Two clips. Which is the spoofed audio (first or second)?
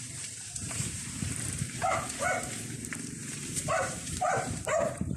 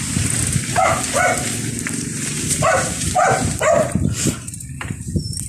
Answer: first